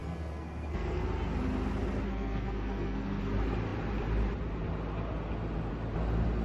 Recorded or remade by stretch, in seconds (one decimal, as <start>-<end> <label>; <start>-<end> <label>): 0.0-1.0 remade; 1.0-2.1 recorded; 2.1-3.2 remade; 3.2-6.4 recorded